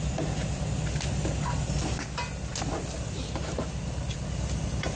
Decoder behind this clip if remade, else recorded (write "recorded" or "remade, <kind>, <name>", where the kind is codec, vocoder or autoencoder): recorded